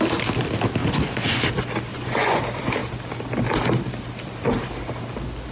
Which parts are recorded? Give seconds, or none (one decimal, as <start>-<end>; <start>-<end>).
0.0-0.8; 1.4-1.9; 2.4-5.5